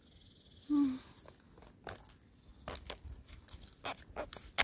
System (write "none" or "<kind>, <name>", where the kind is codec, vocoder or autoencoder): none